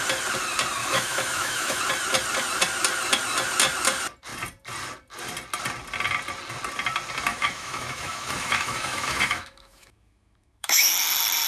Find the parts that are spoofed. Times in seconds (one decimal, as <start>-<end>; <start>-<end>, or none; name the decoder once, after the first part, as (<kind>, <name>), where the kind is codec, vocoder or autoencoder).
0.8-1.8 (autoencoder, DAC-VAE); 7.3-10.9